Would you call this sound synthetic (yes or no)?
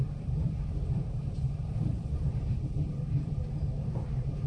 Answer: yes